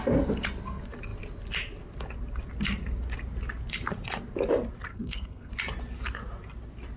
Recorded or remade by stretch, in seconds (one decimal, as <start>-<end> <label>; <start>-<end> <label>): 0.0-4.9 recorded; 4.9-5.5 remade; 5.5-7.0 recorded